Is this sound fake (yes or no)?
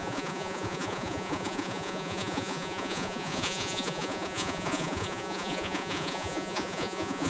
yes